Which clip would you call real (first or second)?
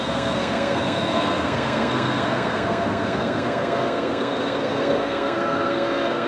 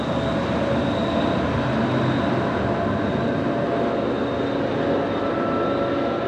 second